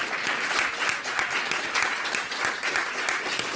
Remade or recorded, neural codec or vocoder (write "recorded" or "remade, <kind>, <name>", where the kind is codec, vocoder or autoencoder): recorded